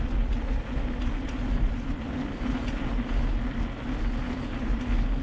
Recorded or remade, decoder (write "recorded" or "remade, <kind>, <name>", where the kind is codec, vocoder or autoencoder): recorded